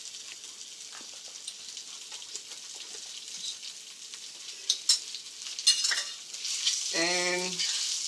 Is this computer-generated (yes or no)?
no